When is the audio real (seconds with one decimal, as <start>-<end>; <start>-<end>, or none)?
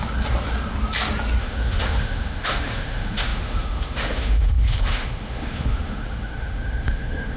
0.0-1.4